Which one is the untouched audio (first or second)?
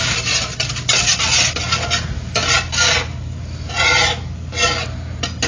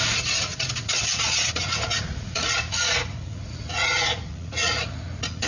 first